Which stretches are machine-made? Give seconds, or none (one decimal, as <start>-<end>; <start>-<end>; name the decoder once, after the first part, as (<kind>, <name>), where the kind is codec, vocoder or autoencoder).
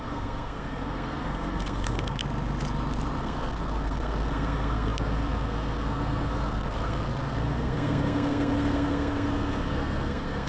0.0-2.2 (codec, SNAC); 3.2-10.5